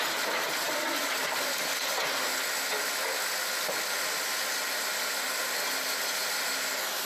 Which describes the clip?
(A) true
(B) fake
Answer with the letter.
A